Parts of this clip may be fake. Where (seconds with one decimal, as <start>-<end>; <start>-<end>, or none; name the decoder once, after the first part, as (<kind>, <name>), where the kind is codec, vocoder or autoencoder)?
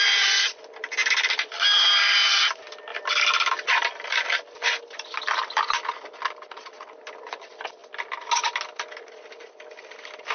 none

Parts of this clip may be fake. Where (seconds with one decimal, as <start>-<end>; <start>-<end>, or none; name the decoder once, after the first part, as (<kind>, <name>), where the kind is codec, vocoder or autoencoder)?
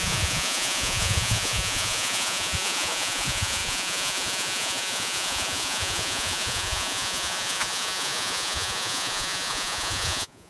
0.0-10.5 (vocoder, Vocos)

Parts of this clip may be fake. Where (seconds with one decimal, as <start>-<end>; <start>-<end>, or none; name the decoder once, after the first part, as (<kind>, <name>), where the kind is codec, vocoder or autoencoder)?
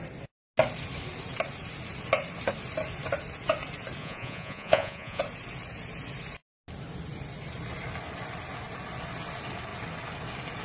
4.0-5.2 (vocoder, Vocos)